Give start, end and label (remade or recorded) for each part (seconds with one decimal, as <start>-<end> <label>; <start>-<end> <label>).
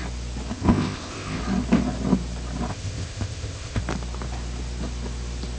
0.0-0.5 recorded; 0.5-1.4 remade; 1.4-2.7 recorded; 2.7-3.8 remade; 3.8-5.6 recorded